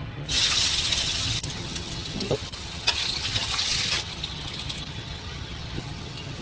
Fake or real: fake